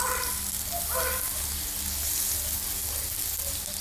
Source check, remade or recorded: recorded